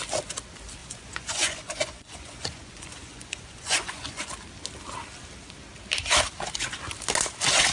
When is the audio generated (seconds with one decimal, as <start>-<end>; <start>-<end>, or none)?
0.8-4.3